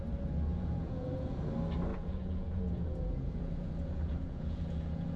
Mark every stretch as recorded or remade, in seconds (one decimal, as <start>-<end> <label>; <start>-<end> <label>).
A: 0.0-0.5 recorded; 0.5-1.4 remade; 1.4-1.9 recorded; 1.9-5.2 remade